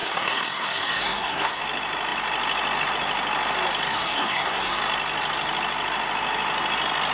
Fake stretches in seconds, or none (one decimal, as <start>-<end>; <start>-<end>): 0.0-1.6; 3.9-4.8

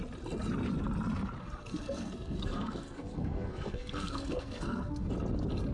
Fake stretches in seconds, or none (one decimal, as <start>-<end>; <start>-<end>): 1.7-5.1